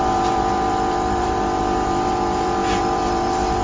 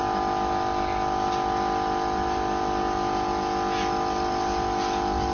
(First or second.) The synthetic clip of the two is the first